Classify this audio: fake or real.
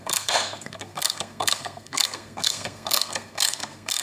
fake